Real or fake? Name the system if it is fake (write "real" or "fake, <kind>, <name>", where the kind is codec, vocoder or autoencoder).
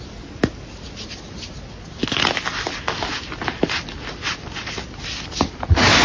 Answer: real